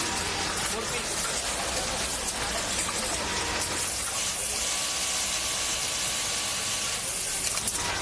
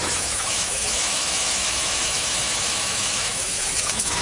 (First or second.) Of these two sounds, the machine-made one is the second